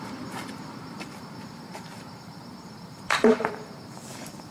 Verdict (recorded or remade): remade